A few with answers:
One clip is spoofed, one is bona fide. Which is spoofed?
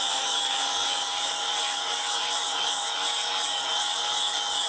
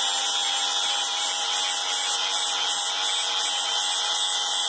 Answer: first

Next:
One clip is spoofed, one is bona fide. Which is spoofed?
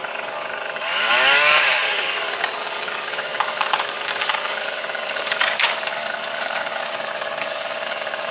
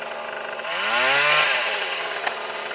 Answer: first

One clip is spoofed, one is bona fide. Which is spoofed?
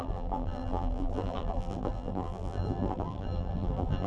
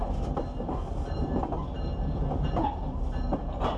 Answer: first